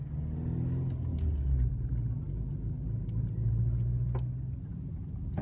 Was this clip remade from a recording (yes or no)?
no